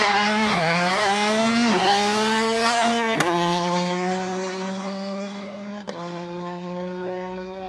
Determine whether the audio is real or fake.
fake